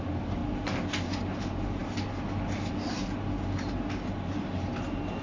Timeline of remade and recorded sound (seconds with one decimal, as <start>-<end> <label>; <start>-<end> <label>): 0.0-5.2 recorded